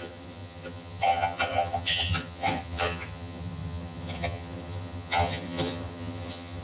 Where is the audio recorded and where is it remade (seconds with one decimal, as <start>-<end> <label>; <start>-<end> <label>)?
0.0-6.6 remade